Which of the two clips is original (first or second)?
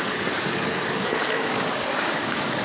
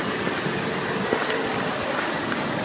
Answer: second